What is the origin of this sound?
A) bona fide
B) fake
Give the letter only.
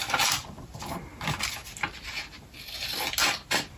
A